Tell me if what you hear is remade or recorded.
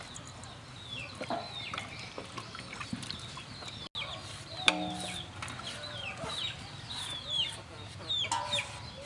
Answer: recorded